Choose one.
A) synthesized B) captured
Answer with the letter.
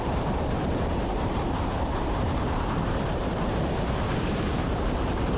A